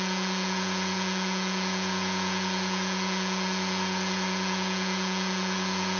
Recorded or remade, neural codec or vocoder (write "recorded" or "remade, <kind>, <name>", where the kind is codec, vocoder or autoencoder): remade, vocoder, Vocos